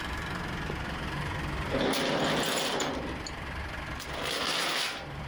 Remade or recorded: remade